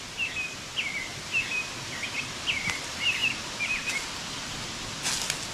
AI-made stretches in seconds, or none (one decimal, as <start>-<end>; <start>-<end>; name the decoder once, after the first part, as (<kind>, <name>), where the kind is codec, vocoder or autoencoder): none